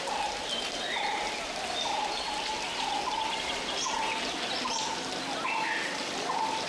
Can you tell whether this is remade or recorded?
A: recorded